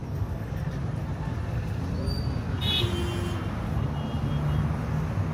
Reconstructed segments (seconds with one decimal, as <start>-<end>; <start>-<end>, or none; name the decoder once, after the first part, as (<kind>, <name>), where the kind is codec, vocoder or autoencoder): none